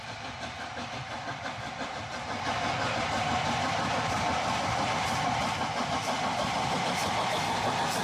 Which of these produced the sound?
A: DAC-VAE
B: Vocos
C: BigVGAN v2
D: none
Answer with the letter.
C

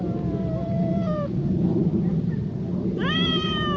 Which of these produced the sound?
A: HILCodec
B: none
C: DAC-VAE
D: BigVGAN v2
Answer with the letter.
D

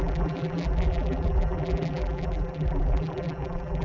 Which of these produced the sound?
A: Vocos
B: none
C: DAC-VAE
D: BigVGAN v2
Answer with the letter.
D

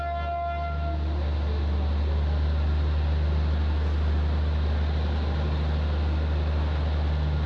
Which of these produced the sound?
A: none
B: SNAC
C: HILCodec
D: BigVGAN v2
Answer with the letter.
A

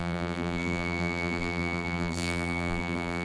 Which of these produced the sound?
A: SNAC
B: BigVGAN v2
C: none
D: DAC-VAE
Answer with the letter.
B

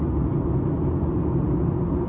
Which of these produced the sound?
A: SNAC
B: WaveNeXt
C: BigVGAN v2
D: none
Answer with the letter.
D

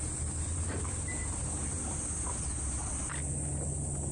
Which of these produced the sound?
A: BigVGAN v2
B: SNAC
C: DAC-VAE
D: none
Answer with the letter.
D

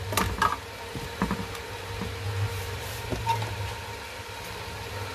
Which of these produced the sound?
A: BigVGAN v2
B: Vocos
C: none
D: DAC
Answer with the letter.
C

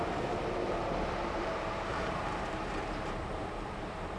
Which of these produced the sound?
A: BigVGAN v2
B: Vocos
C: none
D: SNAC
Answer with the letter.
A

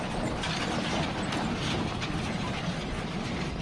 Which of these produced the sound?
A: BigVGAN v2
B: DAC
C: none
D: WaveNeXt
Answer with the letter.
A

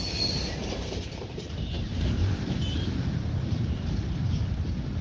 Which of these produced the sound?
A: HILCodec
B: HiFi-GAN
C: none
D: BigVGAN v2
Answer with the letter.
D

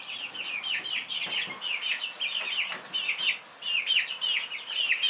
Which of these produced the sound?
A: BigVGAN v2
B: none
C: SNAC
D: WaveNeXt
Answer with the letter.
B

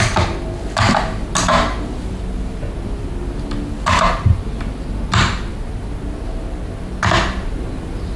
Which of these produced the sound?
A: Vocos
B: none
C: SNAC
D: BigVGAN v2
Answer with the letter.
B